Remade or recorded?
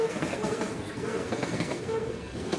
remade